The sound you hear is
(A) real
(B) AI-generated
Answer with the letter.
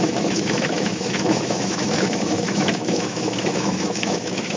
B